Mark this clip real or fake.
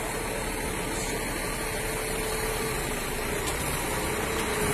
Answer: real